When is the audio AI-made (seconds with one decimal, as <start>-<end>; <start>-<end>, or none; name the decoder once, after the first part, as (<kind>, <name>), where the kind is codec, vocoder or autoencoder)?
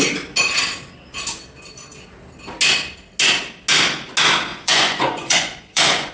4.5-6.1 (vocoder, Vocos)